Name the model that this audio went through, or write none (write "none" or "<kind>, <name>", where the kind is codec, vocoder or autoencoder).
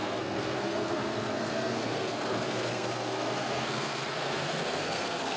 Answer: codec, SNAC